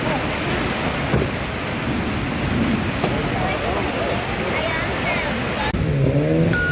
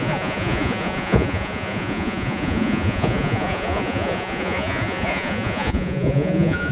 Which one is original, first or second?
first